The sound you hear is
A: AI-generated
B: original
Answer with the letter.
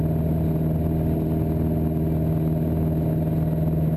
B